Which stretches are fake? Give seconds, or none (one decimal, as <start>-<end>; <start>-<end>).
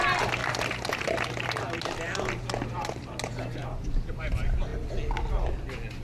3.6-4.2